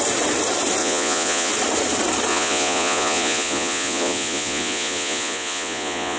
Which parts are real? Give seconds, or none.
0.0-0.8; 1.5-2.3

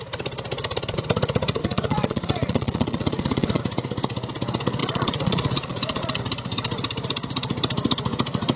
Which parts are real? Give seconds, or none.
0.0-1.6; 3.6-4.8; 6.2-8.6